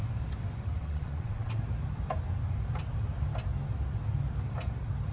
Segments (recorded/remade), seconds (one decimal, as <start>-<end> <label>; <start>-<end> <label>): 0.0-0.8 recorded; 0.8-1.6 remade; 1.6-5.1 recorded